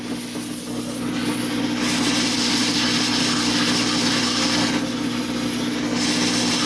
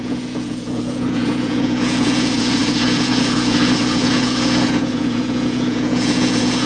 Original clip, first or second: first